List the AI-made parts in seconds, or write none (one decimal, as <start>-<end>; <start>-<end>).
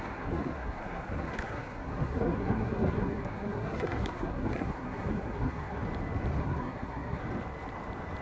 0.0-5.8; 6.4-7.2